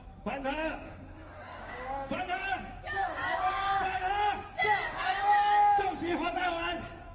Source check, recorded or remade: remade